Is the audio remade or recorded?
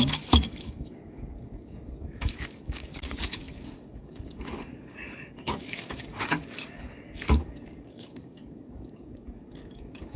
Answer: remade